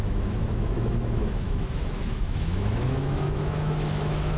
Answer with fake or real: fake